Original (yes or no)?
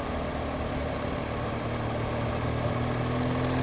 yes